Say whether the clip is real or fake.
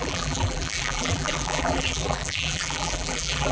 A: fake